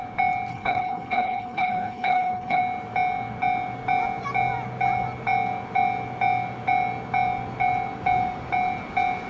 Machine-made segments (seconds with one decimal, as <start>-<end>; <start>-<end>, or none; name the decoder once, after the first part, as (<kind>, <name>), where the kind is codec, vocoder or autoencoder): 0.5-2.6 (codec, HILCodec)